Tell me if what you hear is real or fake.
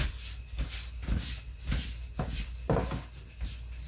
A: real